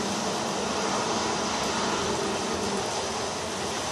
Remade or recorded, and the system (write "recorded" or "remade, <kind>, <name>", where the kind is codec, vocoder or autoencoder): recorded